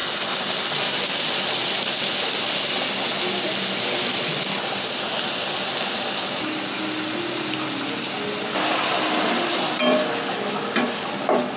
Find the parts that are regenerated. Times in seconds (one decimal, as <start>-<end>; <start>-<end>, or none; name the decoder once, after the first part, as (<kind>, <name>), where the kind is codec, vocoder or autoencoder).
none